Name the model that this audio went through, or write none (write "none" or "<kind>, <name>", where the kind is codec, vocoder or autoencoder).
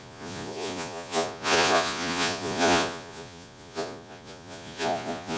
vocoder, Vocos